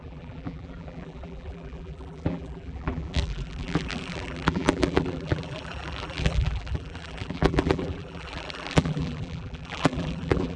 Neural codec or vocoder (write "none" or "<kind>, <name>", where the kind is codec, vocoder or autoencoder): vocoder, BigVGAN v2